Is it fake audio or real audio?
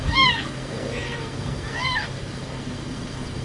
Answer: fake